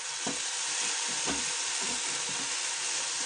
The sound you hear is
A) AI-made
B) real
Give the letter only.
B